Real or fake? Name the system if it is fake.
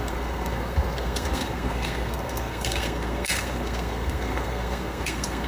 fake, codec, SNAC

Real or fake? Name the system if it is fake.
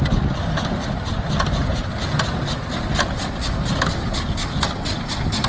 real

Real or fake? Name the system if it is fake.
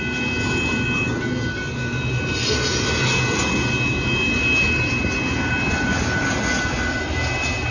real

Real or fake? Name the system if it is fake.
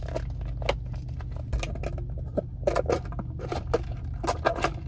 real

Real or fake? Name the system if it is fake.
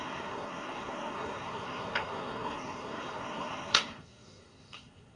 fake, codec, SNAC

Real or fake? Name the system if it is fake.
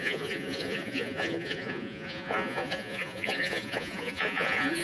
fake, vocoder, Vocos